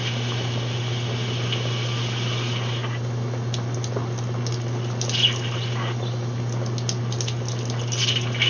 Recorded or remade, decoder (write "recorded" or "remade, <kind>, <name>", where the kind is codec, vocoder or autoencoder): recorded